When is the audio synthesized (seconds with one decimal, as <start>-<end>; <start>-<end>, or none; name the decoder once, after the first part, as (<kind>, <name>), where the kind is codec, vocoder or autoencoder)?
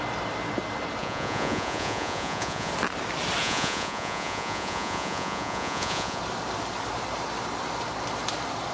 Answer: 1.0-2.7 (vocoder, Vocos); 3.4-6.2